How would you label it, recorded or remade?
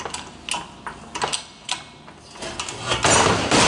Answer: recorded